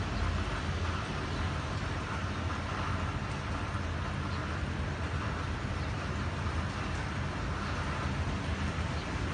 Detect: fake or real real